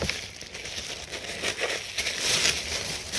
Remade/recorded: recorded